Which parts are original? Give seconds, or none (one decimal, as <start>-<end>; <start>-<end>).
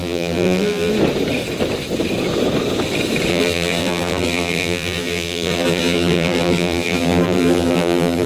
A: 0.9-3.3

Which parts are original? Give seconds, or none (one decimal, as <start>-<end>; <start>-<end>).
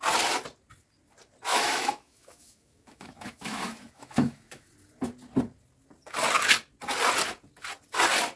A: 0.0-1.5; 4.7-8.4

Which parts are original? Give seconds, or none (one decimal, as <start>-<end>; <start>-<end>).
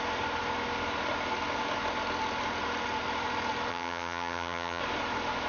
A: 0.0-3.7; 4.8-5.5